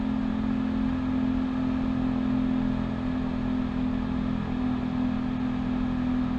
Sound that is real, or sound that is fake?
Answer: real